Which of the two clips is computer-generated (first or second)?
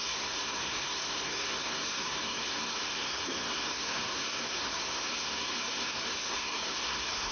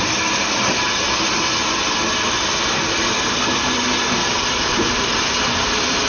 first